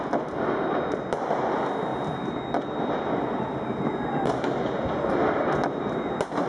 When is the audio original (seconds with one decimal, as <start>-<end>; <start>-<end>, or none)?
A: 0.0-6.5

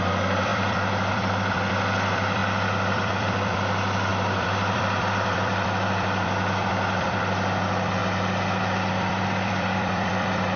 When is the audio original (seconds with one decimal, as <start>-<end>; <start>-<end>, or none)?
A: 8.0-8.6

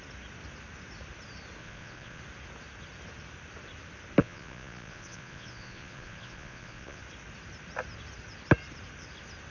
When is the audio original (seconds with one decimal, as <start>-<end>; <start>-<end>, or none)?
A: 0.0-1.6; 2.2-4.2; 7.0-9.5

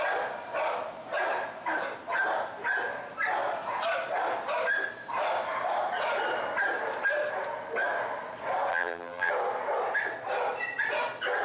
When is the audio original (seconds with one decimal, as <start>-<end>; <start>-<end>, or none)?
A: 0.0-8.7; 9.3-11.4

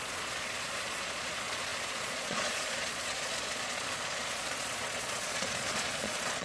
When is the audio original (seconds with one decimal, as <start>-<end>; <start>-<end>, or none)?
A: none